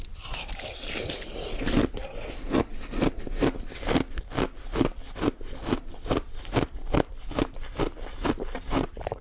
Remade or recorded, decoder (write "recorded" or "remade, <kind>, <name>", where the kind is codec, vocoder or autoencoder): recorded